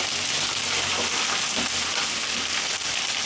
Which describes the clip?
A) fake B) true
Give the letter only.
B